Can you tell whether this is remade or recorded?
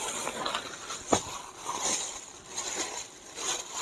recorded